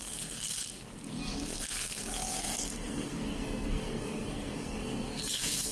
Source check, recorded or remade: remade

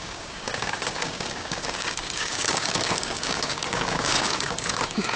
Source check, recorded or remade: remade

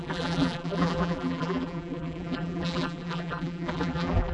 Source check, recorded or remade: remade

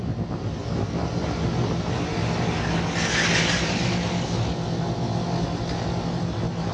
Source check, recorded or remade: recorded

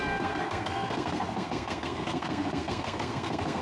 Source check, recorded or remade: remade